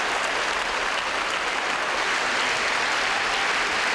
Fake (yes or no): no